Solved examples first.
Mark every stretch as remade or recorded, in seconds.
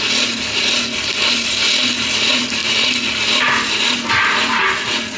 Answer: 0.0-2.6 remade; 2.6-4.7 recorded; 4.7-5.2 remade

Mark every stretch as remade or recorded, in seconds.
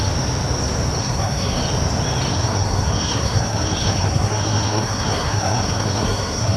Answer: 0.0-1.0 recorded; 1.0-1.6 remade; 1.6-2.3 recorded; 2.3-6.6 remade